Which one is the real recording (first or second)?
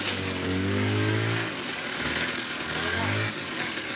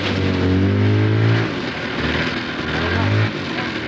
second